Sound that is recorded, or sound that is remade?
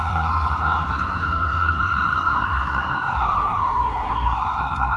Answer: remade